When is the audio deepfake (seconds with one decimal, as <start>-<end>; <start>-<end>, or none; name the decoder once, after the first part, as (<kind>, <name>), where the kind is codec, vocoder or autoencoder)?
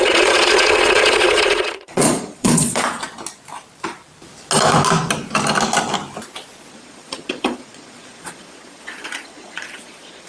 0.0-3.0 (vocoder, Vocos); 6.7-10.3